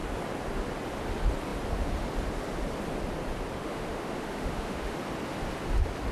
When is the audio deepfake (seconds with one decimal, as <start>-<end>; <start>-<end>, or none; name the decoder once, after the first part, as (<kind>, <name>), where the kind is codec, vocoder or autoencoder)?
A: 3.6-4.9 (autoencoder, DAC-VAE)